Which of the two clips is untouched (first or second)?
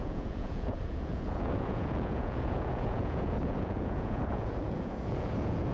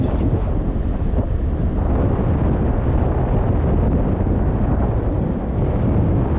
second